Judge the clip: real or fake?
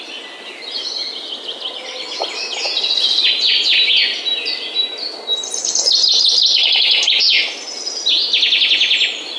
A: real